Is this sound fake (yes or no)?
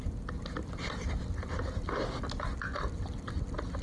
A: no